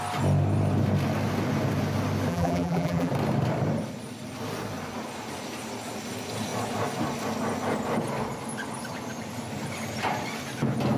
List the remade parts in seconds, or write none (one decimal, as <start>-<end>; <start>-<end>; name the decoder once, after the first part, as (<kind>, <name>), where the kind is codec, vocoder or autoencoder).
2.3-3.1 (vocoder, BigVGAN v2)